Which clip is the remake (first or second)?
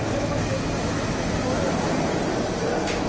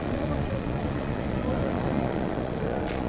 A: second